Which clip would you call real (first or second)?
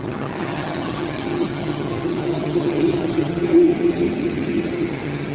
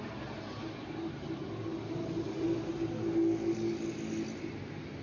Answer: second